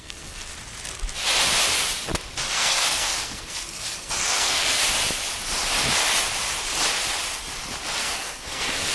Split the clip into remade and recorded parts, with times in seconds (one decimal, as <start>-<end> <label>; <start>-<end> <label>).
0.0-0.4 remade; 0.4-2.5 recorded; 2.5-4.8 remade; 4.8-8.0 recorded; 8.0-8.9 remade

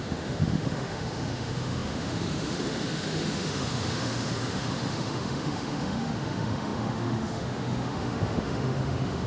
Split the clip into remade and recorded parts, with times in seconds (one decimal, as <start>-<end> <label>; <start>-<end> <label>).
0.0-9.3 remade

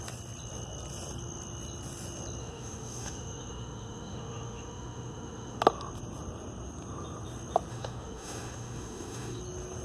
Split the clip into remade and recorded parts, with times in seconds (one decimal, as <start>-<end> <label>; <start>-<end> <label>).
0.0-2.4 recorded; 2.4-5.6 remade; 5.6-7.7 recorded; 7.7-9.4 remade; 9.4-9.8 recorded